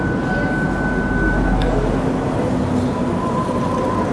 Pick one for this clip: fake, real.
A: real